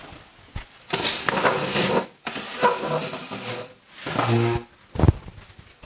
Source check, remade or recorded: recorded